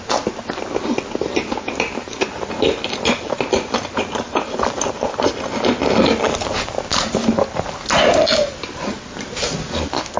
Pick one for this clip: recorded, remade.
recorded